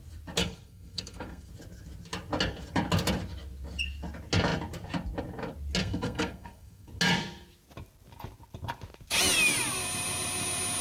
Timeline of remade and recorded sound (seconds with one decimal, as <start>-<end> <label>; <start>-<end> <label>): 0.0-0.4 recorded; 0.4-1.5 remade; 1.5-5.8 recorded; 5.8-6.9 remade; 6.9-10.8 recorded

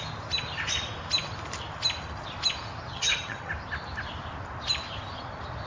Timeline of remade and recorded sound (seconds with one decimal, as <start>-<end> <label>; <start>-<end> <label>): 0.0-2.9 recorded; 2.9-3.5 remade; 3.5-5.7 recorded

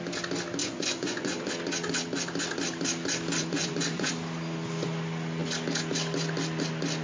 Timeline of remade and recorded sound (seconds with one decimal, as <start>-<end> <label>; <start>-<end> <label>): 0.0-0.6 recorded; 0.6-1.5 remade; 1.5-3.4 recorded; 3.4-4.1 remade; 4.1-7.0 recorded

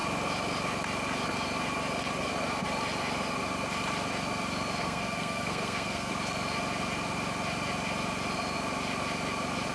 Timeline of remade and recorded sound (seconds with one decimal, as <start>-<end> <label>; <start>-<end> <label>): 0.0-4.8 recorded; 4.8-6.1 remade; 6.1-9.7 recorded

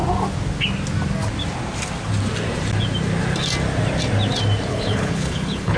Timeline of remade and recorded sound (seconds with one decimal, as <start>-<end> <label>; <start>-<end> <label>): 0.0-4.7 recorded; 4.7-5.8 remade

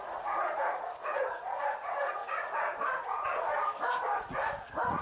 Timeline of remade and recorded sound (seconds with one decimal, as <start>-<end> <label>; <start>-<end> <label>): 0.0-2.2 remade; 2.2-2.9 recorded; 2.9-3.5 remade; 3.5-4.2 recorded; 4.2-5.0 remade

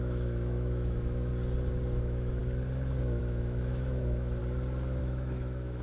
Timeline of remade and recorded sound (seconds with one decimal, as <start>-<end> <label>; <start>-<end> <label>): 0.0-1.3 remade; 1.3-2.0 recorded; 2.0-2.4 remade; 2.4-3.2 recorded; 3.2-4.4 remade; 4.4-5.0 recorded; 5.0-5.8 remade

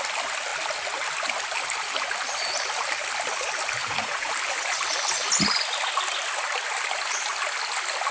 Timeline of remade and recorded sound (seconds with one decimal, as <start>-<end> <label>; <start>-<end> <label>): 0.0-3.8 recorded; 3.8-4.3 remade; 4.3-8.1 recorded